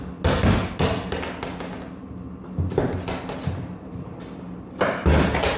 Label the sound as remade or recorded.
recorded